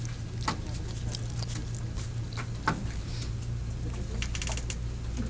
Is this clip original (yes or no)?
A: yes